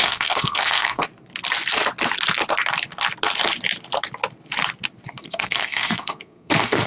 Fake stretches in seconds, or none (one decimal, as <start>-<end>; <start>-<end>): 0.0-1.0; 5.1-6.9